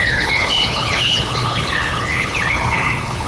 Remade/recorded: remade